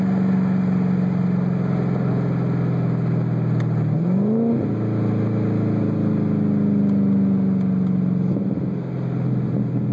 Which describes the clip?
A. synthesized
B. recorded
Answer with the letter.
B